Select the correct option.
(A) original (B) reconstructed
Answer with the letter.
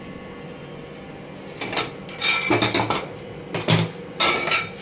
A